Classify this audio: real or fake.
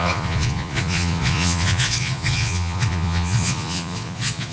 fake